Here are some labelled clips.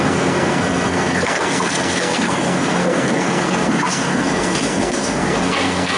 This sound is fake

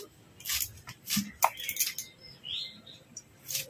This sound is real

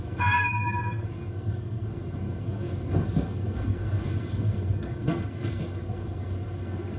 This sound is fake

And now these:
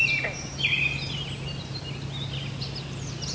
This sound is real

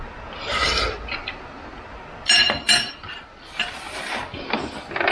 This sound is real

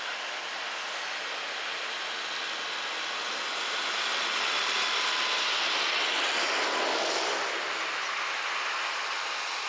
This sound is real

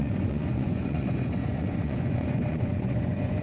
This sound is fake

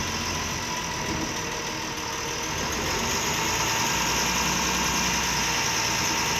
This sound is real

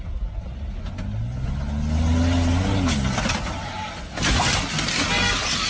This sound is real